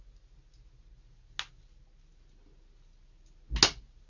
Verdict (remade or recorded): recorded